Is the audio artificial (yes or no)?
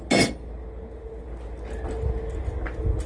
no